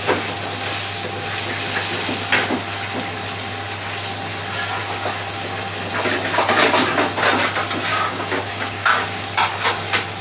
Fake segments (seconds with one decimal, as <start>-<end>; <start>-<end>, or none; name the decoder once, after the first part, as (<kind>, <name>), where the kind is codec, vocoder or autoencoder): 7.9-9.2 (codec, DAC)